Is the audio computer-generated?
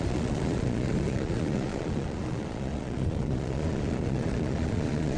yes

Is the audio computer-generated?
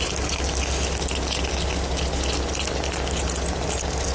no